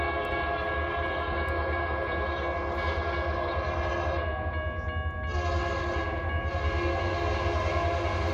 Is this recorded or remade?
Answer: recorded